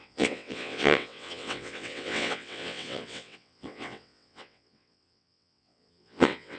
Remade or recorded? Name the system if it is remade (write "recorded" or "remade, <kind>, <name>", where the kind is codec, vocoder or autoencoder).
remade, vocoder, WaveNeXt